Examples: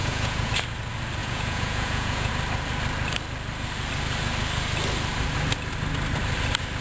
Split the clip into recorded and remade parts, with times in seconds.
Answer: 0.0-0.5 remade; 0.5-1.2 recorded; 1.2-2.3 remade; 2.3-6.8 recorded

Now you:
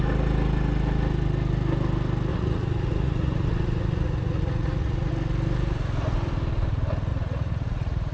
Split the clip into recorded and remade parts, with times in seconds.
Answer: 0.0-2.3 recorded; 2.3-5.1 remade; 5.1-7.1 recorded; 7.1-8.1 remade

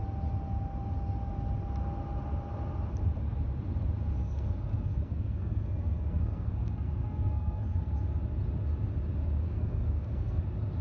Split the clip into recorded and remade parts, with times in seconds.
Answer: 0.0-4.2 recorded; 4.2-8.1 remade; 8.1-9.4 recorded; 9.4-10.4 remade; 10.4-10.8 recorded

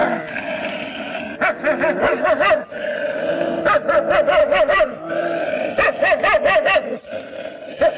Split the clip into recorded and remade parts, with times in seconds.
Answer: 0.0-4.4 recorded; 4.4-5.1 remade; 5.1-8.0 recorded

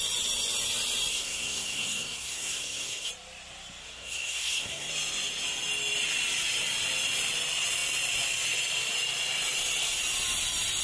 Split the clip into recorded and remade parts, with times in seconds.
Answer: 0.0-1.1 recorded; 1.1-3.1 remade; 3.1-3.8 recorded; 3.8-4.9 remade; 4.9-10.8 recorded

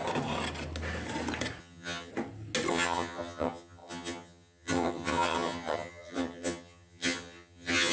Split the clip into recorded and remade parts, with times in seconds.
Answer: 0.0-1.6 recorded; 1.6-2.1 remade; 2.1-2.7 recorded; 2.7-7.9 remade

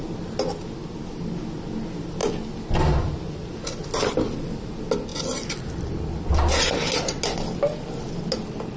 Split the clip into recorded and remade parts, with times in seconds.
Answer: 0.0-8.8 recorded